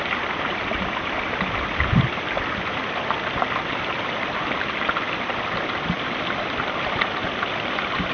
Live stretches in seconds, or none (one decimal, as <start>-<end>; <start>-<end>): 0.0-8.1